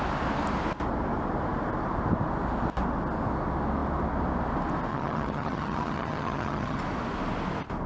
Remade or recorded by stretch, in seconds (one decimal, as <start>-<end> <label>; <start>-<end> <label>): 0.0-4.9 recorded; 4.9-6.8 remade; 6.8-7.9 recorded